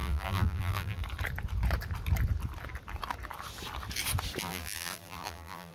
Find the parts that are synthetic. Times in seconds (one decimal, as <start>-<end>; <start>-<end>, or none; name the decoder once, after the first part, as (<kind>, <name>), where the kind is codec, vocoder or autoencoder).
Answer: 0.0-1.0 (vocoder, BigVGAN v2); 4.4-5.7